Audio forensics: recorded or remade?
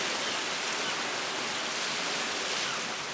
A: recorded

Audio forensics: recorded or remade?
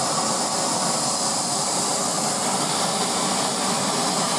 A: recorded